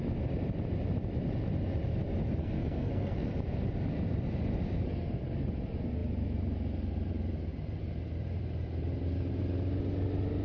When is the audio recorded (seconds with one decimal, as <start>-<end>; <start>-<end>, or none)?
0.0-2.4; 3.3-10.4